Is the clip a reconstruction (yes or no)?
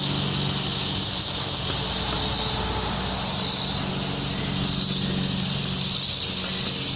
no